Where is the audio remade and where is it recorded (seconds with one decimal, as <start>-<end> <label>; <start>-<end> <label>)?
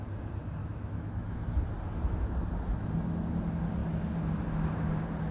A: 0.0-0.6 recorded; 0.6-1.5 remade; 1.5-5.3 recorded